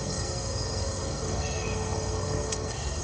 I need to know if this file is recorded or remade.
remade